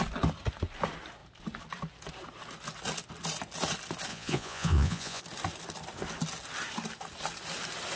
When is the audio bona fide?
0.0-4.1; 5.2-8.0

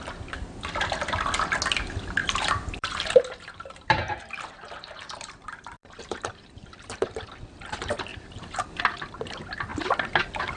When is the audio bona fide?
0.0-2.2; 7.3-8.1; 8.8-10.6

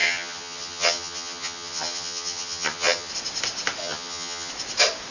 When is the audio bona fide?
3.1-3.8; 4.5-5.1

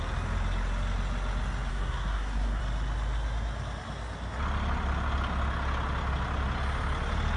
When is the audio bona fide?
0.0-1.7; 2.6-7.4

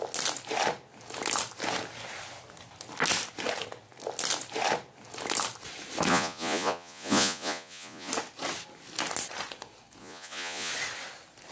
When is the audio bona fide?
0.0-6.1; 8.1-10.0; 10.7-11.5

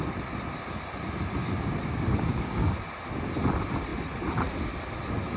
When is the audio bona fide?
0.0-1.4; 2.7-5.4

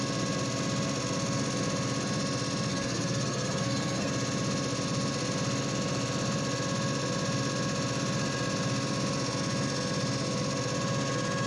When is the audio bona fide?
0.0-2.7; 4.1-11.5

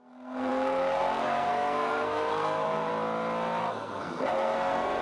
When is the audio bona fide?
2.9-3.6